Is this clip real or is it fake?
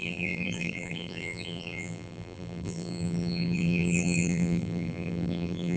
fake